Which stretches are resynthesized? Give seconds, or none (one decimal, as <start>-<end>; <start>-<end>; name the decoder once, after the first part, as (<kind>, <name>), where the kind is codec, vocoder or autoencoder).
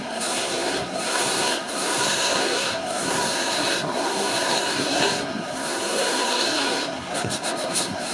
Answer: 0.0-8.1 (codec, SNAC)